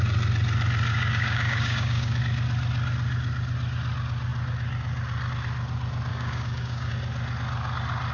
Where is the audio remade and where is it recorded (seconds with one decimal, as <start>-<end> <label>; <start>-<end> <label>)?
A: 0.0-0.9 recorded; 0.9-2.2 remade; 2.2-6.1 recorded; 6.1-6.9 remade; 6.9-8.1 recorded